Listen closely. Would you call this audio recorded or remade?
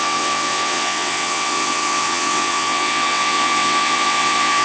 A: remade